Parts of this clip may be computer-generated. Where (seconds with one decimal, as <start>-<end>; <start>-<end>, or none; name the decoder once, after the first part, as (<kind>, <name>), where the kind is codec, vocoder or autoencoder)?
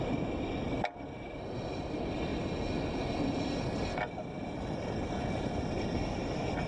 none